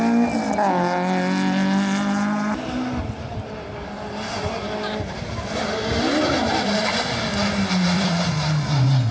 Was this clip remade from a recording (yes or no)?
no